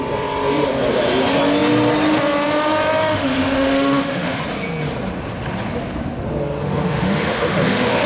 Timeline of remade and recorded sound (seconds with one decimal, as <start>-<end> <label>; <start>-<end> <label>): 0.0-3.1 recorded; 3.1-4.4 remade; 4.4-6.6 recorded; 6.6-8.1 remade